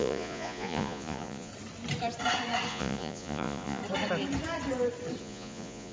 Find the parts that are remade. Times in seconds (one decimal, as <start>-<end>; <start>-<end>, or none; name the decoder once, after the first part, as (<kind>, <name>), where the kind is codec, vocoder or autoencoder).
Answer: 0.0-1.5 (vocoder, Vocos); 2.7-3.8; 5.2-5.9